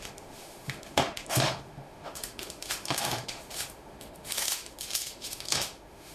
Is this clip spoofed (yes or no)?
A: yes